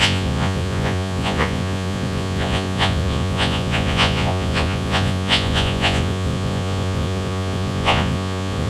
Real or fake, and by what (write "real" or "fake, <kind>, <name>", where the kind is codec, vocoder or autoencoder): fake, vocoder, Vocos